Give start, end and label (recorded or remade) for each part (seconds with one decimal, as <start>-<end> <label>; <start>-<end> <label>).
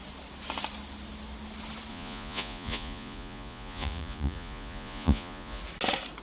0.0-1.9 recorded; 1.9-5.6 remade; 5.6-6.2 recorded